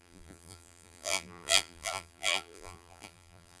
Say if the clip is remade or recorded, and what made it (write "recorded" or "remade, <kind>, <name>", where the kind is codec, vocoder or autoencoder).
remade, vocoder, BigVGAN v2